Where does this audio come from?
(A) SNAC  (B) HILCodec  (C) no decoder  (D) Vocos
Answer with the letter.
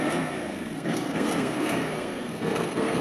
A